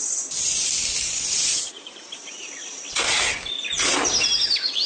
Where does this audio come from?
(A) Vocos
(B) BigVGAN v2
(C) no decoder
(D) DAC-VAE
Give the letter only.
C